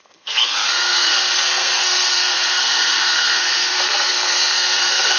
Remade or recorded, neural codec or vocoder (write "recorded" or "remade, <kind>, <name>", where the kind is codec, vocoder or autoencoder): remade, codec, SNAC